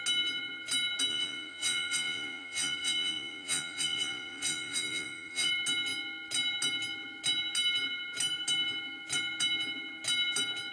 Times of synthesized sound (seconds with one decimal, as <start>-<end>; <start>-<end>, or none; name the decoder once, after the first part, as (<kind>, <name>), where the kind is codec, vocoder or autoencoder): 1.1-5.5 (vocoder, Vocos)